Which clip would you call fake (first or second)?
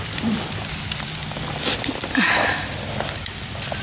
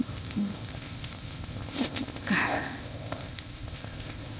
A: second